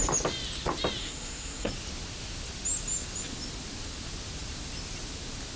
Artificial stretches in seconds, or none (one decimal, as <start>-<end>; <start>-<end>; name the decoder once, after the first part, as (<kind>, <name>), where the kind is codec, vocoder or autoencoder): 1.0-1.7 (codec, SNAC)